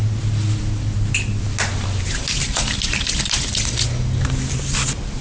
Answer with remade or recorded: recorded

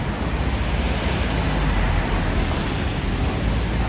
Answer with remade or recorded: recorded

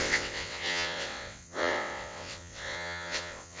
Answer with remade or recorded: remade